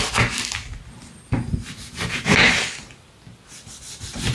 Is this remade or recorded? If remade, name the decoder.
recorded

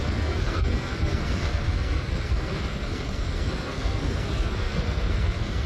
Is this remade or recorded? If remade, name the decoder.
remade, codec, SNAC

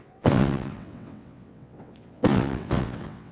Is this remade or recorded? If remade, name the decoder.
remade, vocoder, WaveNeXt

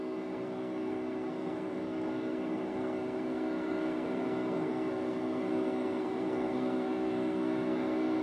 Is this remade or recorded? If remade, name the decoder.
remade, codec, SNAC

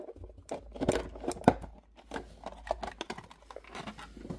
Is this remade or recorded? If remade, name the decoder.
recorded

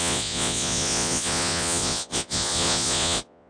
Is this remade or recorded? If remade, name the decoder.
remade, vocoder, Vocos